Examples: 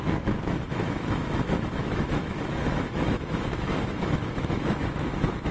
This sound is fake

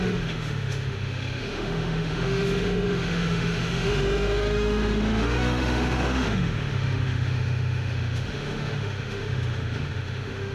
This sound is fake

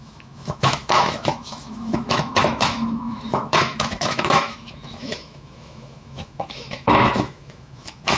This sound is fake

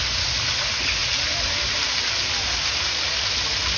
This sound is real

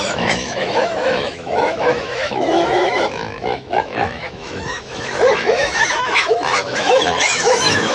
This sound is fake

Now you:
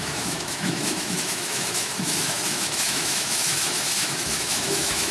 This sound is fake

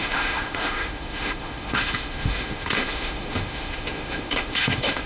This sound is fake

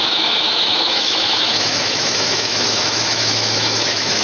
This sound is fake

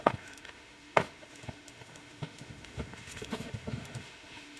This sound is fake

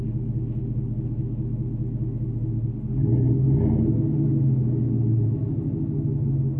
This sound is real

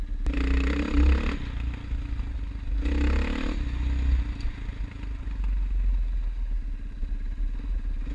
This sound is real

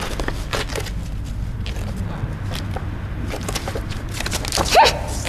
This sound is real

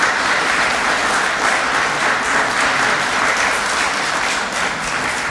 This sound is real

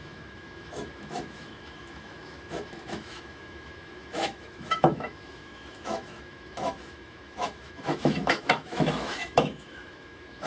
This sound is fake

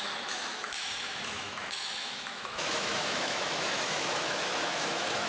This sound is fake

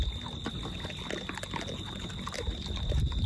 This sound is real